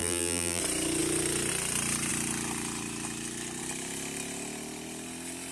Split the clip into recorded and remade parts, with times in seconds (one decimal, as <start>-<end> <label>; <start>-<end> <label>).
0.0-0.6 remade; 0.6-5.5 recorded